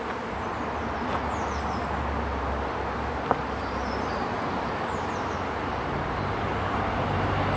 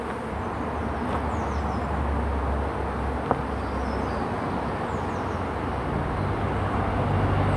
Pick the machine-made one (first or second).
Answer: first